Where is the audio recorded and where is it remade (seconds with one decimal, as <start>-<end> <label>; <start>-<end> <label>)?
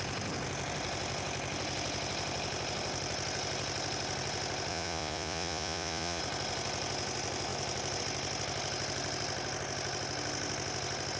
0.0-4.7 recorded; 4.7-6.2 remade; 6.2-11.2 recorded